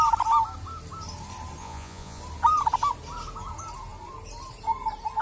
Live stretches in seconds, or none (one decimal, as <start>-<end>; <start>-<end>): 0.0-1.6; 2.2-5.2